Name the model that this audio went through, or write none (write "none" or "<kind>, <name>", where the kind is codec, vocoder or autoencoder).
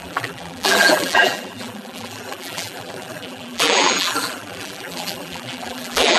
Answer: vocoder, BigVGAN v2